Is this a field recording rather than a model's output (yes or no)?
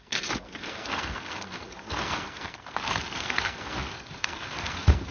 no